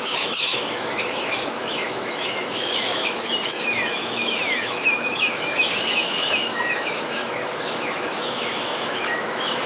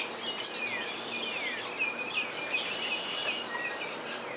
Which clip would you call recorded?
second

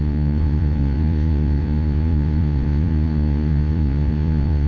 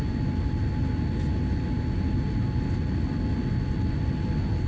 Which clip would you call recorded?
second